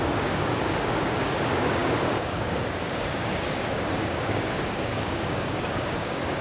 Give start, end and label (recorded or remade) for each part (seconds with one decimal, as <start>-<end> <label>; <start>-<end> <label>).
0.0-6.4 remade